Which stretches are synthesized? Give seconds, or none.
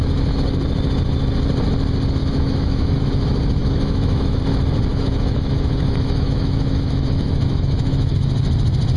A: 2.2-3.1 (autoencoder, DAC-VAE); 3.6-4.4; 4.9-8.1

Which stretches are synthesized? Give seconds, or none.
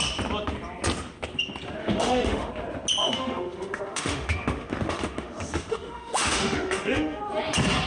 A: 1.8-2.5 (autoencoder, DAC-VAE); 3.0-7.2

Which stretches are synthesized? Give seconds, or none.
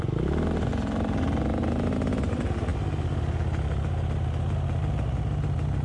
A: none